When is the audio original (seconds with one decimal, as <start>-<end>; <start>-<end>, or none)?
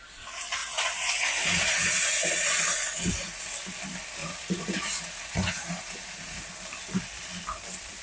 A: 0.0-0.6; 3.4-4.2; 6.5-8.0